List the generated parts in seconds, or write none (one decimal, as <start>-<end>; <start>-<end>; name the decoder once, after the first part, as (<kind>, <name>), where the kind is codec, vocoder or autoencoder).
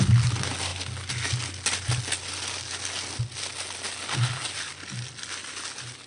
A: none